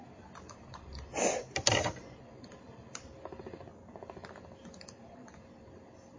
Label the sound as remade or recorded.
recorded